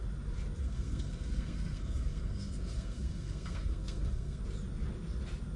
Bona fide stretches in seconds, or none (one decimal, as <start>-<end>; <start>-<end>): 0.0-0.6; 4.4-5.6